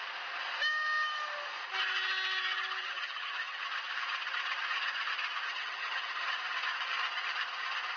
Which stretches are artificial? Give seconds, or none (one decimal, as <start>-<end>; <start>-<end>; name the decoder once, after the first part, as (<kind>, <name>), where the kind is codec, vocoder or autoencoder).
2.8-3.6 (vocoder, HiFi-GAN); 5.5-6.3